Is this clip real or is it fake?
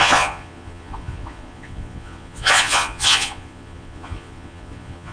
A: fake